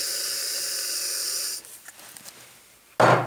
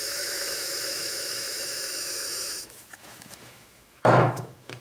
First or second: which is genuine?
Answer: first